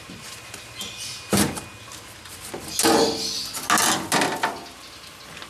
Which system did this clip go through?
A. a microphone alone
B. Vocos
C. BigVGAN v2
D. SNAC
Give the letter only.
A